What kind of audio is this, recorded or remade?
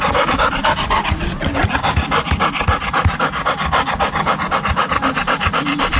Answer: recorded